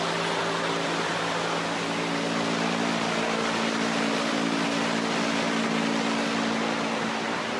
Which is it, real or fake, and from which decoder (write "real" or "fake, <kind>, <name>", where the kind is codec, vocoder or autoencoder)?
real